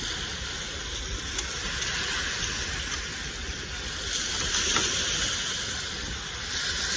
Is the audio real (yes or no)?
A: yes